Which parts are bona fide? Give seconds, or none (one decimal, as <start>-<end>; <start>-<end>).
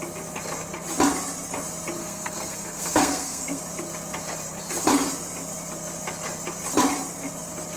0.0-2.0; 3.6-7.8